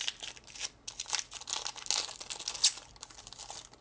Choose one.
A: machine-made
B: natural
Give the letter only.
B